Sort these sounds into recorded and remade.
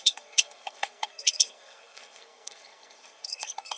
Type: remade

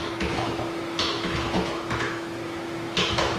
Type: remade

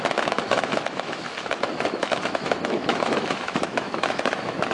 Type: remade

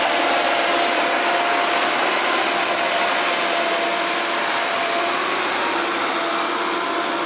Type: recorded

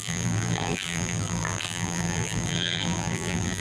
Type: remade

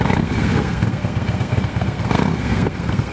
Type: remade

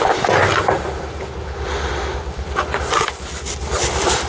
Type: recorded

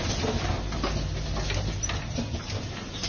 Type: recorded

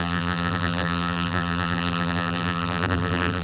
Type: remade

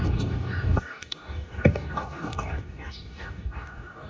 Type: remade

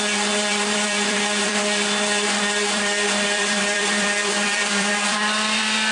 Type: remade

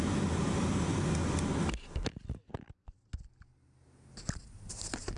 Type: recorded